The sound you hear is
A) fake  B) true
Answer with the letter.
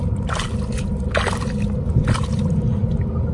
B